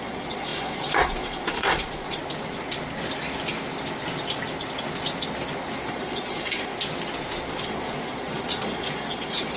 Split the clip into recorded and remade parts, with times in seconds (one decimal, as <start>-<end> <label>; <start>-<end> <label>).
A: 0.0-2.2 remade; 2.2-5.9 recorded; 5.9-6.7 remade; 6.7-7.5 recorded; 7.5-9.6 remade